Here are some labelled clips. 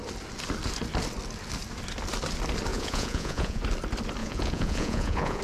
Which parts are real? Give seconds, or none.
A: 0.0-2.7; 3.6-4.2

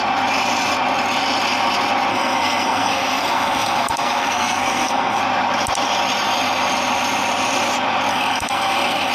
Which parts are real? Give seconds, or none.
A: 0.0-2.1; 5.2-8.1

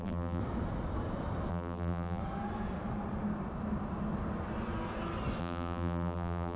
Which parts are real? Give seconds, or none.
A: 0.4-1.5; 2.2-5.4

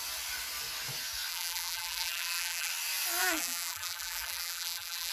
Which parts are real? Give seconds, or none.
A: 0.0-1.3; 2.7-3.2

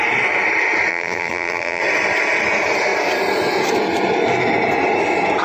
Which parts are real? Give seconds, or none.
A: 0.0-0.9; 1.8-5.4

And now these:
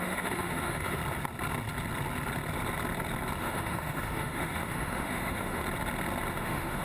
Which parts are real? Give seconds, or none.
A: 1.0-3.4; 5.6-6.3